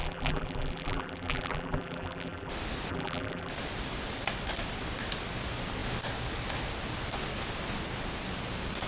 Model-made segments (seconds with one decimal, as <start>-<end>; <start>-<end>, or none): 0.0-2.5; 2.9-3.5